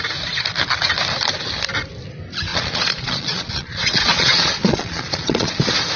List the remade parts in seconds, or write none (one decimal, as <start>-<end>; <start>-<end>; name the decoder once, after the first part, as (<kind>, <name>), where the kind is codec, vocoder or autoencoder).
2.5-5.5 (vocoder, Vocos)